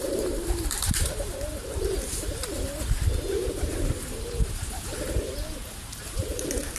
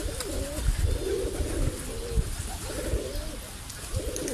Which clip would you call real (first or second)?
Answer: second